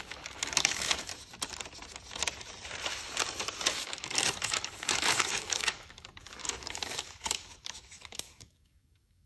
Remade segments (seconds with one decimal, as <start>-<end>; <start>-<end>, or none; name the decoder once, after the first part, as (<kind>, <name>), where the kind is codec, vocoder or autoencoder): 0.0-1.1 (codec, DAC); 3.7-9.3